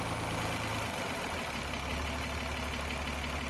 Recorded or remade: recorded